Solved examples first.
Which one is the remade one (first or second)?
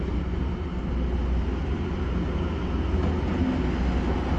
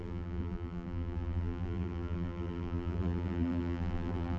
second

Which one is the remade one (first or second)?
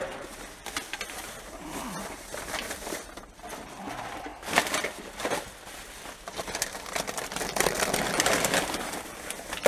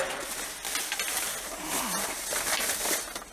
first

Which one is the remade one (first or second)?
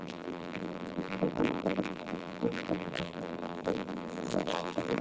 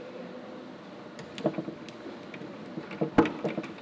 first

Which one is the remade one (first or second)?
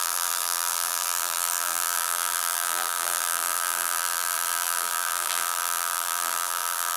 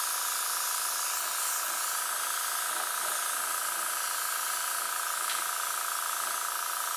first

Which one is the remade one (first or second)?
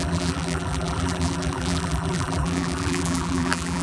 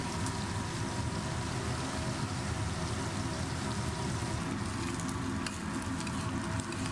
first